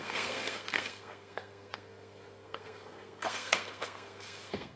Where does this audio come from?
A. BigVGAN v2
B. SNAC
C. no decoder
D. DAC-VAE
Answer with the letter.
B